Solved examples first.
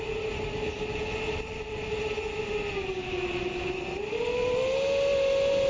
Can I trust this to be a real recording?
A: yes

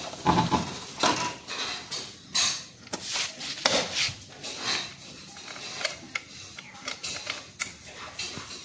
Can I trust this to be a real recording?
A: yes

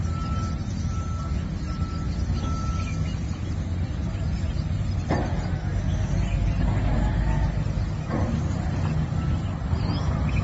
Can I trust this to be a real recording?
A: yes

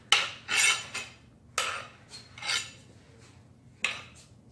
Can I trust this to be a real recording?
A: yes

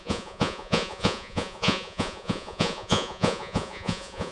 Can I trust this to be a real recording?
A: no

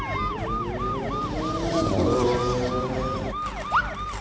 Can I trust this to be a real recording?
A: yes